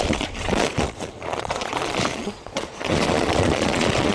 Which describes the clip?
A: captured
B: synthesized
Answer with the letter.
B